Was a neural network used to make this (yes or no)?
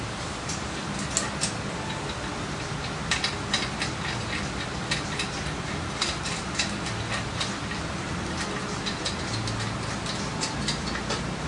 no